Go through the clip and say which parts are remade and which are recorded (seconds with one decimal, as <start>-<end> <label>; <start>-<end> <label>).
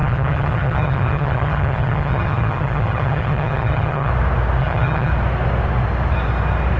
0.0-4.1 remade; 4.1-4.6 recorded; 4.6-5.1 remade; 5.1-6.8 recorded